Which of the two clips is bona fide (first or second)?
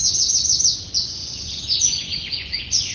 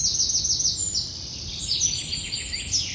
second